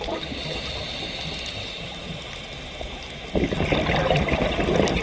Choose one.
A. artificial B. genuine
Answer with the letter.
B